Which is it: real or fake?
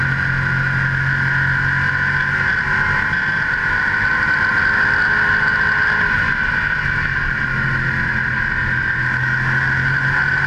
real